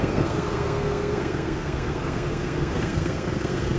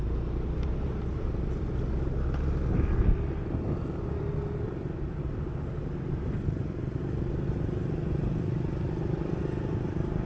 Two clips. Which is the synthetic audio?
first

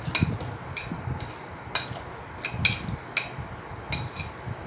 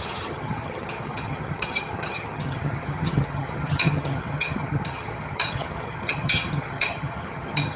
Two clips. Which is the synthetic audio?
second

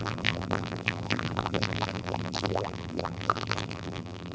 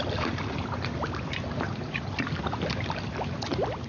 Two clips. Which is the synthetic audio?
first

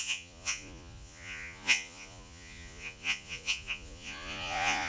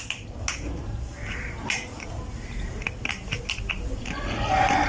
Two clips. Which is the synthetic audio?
first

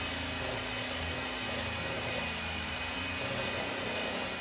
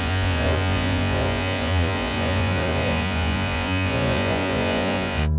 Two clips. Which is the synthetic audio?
second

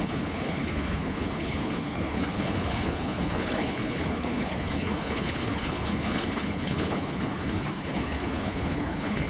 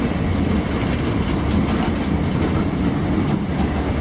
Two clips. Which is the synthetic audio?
first